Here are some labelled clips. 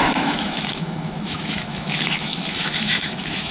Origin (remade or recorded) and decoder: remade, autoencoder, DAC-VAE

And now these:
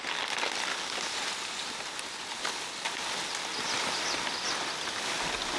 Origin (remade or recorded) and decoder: recorded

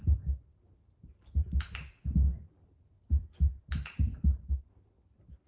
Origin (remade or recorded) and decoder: recorded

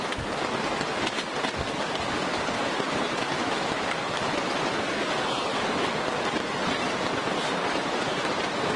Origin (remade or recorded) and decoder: recorded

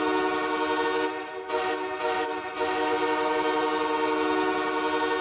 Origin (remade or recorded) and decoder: recorded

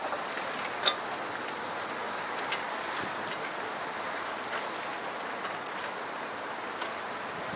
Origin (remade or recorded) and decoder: recorded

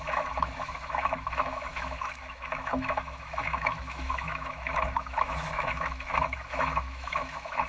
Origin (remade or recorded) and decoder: remade, autoencoder, DAC-VAE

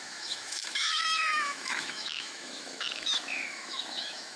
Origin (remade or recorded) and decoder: remade, autoencoder, DAC-VAE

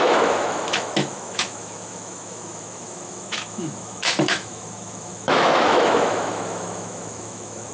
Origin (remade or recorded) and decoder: remade, autoencoder, DAC-VAE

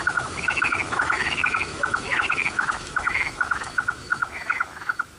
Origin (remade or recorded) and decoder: remade, autoencoder, DAC-VAE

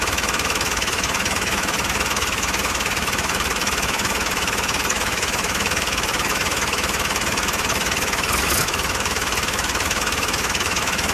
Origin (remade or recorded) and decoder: remade, autoencoder, DAC-VAE